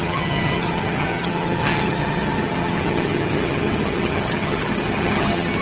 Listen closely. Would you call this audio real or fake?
fake